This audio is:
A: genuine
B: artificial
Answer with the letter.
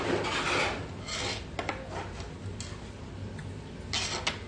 A